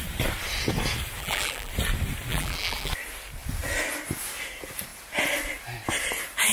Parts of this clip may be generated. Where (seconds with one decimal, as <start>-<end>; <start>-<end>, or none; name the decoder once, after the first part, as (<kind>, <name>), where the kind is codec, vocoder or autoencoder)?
1.2-1.7 (vocoder, BigVGAN v2); 2.3-2.9